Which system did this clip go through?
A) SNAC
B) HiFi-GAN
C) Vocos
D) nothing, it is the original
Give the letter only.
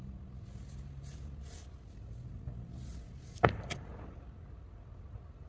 D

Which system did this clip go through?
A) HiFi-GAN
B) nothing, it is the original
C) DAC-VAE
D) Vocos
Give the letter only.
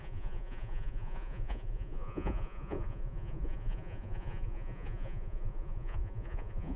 D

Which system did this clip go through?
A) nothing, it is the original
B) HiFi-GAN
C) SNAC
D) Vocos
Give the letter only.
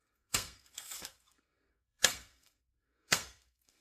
C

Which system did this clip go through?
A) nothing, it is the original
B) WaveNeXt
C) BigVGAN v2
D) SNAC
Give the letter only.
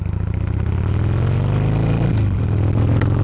A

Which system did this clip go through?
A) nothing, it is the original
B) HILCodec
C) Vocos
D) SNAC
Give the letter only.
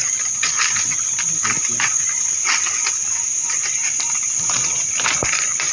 A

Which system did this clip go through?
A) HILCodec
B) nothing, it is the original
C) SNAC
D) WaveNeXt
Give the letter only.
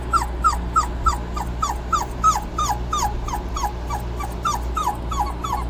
B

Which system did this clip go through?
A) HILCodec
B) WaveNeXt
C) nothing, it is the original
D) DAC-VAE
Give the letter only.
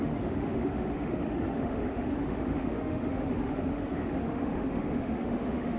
D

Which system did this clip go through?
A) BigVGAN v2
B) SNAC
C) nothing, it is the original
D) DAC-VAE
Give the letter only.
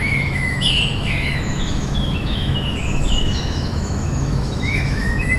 D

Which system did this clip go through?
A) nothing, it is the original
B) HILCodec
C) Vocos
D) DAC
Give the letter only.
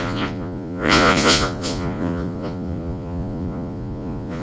C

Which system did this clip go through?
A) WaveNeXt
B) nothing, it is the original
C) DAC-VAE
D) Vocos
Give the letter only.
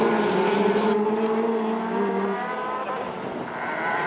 B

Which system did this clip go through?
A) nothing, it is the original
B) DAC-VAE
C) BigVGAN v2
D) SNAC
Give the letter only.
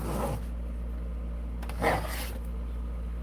A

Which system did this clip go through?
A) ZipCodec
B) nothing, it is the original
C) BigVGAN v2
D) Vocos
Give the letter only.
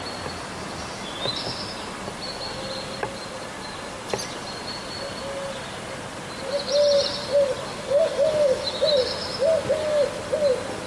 B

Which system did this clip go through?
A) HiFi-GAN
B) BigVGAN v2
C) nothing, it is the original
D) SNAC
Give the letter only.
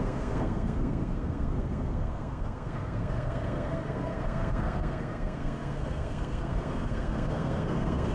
D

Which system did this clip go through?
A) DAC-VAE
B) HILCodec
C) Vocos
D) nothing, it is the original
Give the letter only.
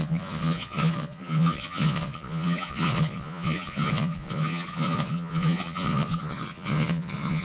C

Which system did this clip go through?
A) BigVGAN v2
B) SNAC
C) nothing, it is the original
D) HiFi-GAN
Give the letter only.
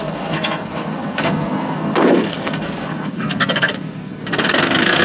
B